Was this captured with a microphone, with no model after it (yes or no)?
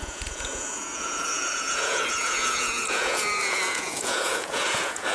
no